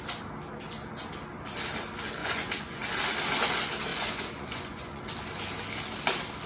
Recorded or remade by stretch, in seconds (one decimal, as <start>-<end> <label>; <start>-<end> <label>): 0.0-2.2 recorded; 2.2-2.8 remade; 2.8-3.9 recorded; 3.9-5.0 remade; 5.0-6.5 recorded